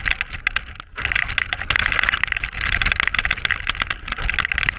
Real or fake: real